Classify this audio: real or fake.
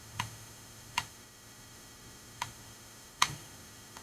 fake